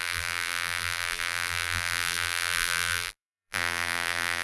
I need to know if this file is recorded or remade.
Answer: remade